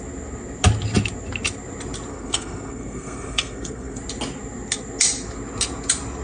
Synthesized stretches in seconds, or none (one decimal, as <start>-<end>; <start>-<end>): 2.1-4.0